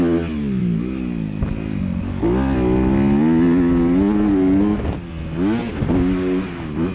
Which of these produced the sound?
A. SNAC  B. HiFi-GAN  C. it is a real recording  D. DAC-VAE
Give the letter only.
C